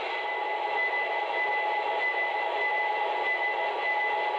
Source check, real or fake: real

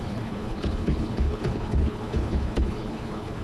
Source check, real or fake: fake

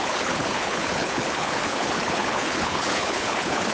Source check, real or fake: fake